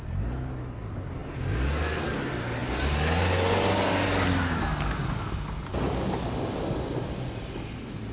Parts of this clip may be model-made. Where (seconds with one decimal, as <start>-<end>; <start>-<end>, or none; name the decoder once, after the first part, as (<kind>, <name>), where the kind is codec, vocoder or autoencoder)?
none

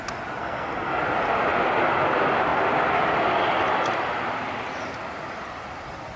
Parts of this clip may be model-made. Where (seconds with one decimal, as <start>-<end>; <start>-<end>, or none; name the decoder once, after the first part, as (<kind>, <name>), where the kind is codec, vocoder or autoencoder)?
0.4-1.0 (codec, SNAC)

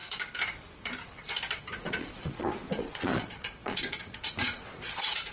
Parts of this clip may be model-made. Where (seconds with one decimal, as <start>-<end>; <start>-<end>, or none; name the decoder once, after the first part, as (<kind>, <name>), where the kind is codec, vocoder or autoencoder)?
1.6-5.3 (vocoder, Vocos)

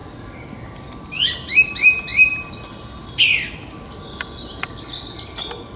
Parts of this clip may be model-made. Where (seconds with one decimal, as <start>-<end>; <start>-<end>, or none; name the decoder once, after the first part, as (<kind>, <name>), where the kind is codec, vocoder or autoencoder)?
none

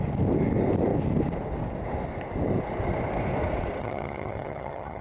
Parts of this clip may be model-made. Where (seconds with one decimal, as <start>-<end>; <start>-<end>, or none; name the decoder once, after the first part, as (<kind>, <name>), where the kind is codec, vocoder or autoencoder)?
3.8-5.0 (vocoder, HiFi-GAN)

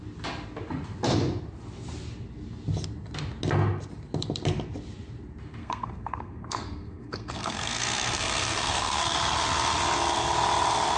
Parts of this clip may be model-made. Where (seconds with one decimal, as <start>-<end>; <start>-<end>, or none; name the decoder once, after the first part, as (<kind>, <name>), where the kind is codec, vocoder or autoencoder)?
5.6-9.0 (codec, SNAC)

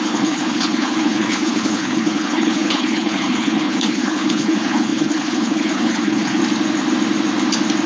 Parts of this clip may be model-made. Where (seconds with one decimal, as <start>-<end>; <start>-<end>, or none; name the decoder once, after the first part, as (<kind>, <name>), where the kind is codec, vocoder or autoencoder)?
0.0-6.4 (codec, HILCodec)